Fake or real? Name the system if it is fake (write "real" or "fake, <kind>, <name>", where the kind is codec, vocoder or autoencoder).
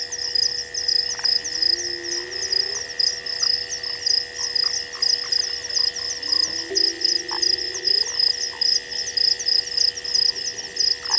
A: real